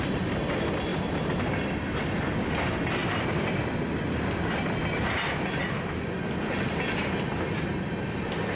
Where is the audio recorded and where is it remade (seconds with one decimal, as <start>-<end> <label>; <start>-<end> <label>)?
0.0-8.6 recorded